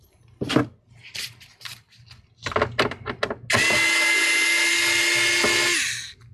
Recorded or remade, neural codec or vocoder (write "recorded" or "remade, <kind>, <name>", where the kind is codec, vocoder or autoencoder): recorded